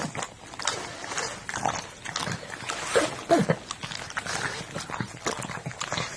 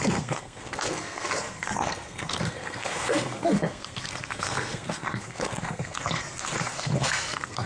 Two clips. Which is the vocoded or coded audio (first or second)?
second